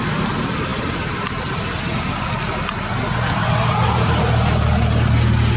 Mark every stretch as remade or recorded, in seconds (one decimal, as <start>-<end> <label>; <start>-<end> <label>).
0.0-5.6 recorded